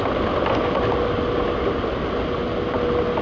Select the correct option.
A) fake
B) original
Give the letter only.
B